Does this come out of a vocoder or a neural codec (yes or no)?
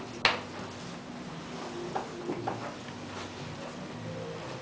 no